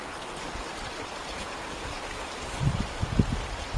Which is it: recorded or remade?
recorded